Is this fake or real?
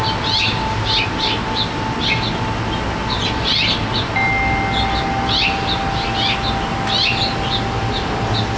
real